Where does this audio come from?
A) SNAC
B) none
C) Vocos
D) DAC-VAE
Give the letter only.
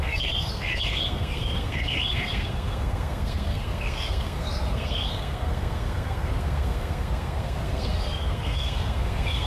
A